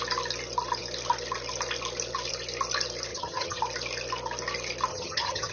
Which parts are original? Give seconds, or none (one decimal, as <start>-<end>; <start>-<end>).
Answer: 0.0-3.1; 3.6-4.9